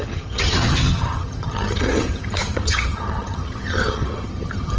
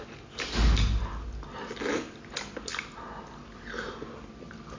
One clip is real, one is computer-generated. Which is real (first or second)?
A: second